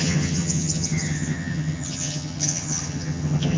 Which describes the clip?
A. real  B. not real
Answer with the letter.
B